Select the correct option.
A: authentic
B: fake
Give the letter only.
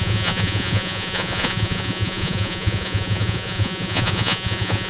B